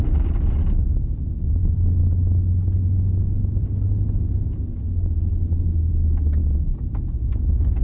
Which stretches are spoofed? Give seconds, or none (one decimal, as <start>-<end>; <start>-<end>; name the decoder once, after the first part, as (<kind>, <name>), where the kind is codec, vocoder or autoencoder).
6.4-7.2 (vocoder, BigVGAN v2)